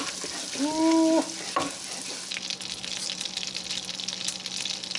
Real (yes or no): yes